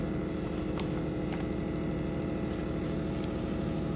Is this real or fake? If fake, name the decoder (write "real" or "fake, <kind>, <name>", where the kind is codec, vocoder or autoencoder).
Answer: real